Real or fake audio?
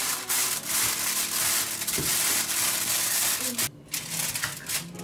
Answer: real